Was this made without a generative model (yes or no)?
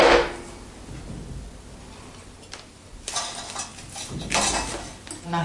yes